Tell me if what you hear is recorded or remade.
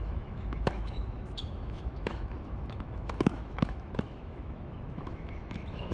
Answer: remade